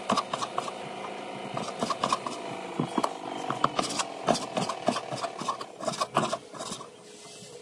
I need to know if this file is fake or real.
real